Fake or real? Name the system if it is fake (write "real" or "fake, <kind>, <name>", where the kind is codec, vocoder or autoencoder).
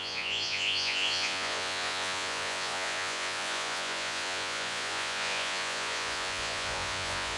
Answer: fake, vocoder, Vocos